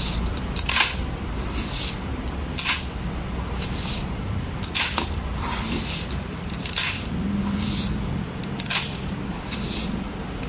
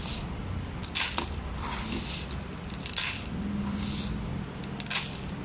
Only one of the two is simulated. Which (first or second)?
first